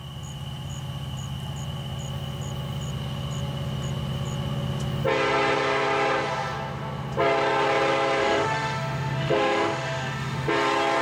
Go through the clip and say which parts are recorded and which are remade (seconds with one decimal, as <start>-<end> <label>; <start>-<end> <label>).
0.0-8.2 recorded; 8.2-10.5 remade; 10.5-11.0 recorded